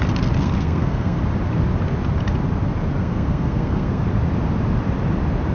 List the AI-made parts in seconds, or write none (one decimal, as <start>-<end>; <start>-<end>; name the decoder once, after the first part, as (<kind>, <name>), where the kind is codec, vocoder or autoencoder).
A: 0.4-1.2 (codec, SNAC); 3.0-4.1